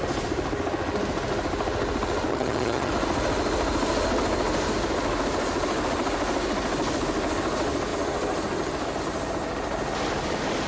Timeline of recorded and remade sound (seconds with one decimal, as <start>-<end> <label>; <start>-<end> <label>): 0.0-2.3 recorded; 2.3-2.9 remade; 2.9-10.7 recorded